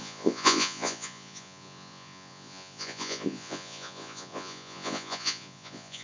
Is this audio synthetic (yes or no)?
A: yes